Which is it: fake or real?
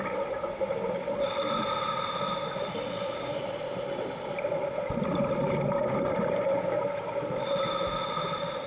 real